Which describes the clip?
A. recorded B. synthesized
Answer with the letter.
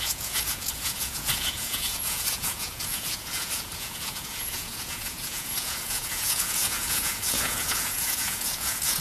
B